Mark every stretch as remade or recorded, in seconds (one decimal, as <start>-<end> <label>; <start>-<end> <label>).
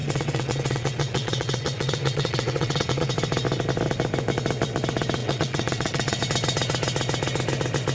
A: 0.0-3.1 remade; 3.1-5.2 recorded; 5.2-6.2 remade; 6.2-7.9 recorded